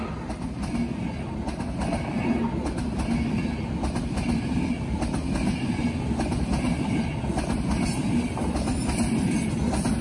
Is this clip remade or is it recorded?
recorded